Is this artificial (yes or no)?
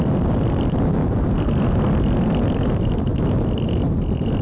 no